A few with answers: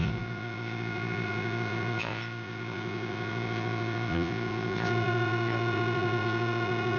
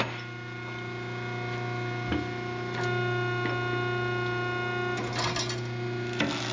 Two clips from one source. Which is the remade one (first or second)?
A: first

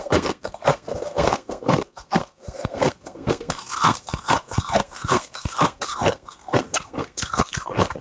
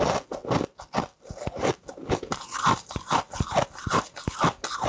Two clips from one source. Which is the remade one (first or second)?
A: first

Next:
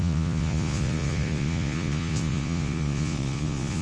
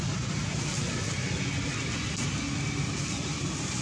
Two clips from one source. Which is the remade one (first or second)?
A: first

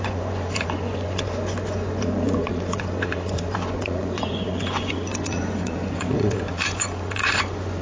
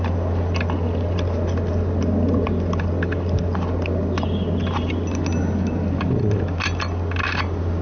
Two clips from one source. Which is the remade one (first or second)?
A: first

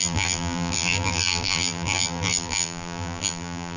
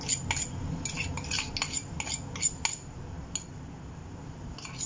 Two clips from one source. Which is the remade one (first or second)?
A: first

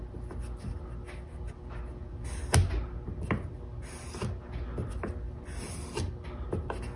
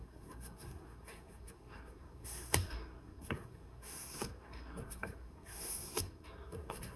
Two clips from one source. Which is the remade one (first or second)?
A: second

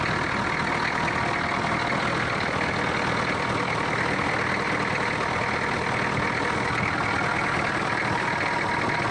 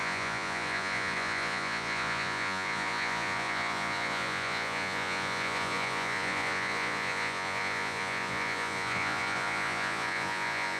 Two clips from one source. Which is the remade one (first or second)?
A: second